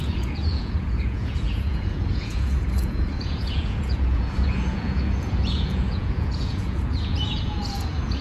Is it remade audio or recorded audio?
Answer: remade